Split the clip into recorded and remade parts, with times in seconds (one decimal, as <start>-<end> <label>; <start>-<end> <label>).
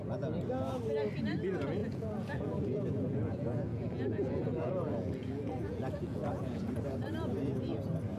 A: 0.0-1.8 recorded; 1.8-6.7 remade; 6.7-8.2 recorded